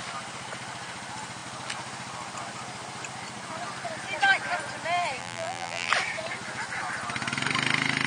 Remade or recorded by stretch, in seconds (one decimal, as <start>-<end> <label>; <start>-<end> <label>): 0.0-5.2 recorded; 5.2-5.9 remade; 5.9-8.1 recorded